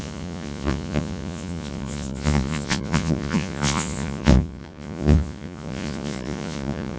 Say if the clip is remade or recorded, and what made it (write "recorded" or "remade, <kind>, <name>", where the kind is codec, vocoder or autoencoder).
remade, vocoder, Vocos